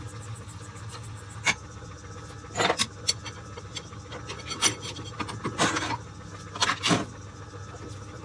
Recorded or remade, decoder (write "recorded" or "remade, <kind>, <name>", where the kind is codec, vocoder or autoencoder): recorded